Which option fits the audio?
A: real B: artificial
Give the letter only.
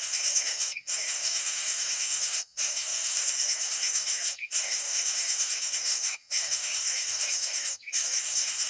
B